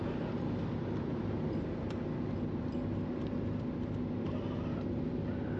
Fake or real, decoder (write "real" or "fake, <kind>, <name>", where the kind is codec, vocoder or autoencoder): real